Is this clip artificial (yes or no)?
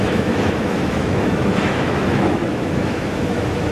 yes